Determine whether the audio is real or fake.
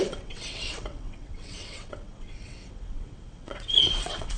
fake